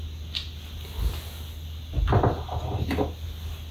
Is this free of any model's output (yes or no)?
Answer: yes